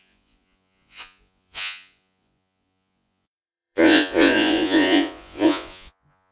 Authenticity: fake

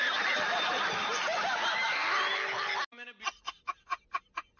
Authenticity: real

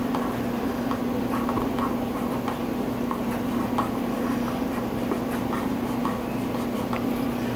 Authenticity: real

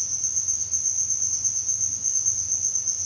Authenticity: real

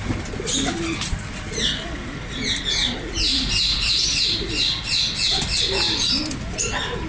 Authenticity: real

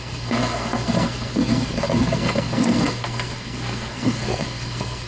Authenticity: fake